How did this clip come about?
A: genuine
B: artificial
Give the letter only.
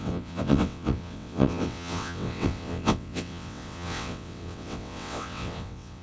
B